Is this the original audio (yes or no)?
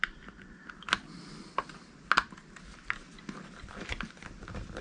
yes